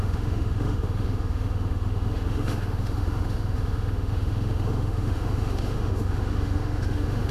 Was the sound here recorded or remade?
remade